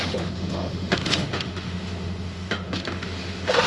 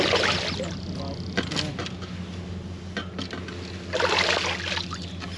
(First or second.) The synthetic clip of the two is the first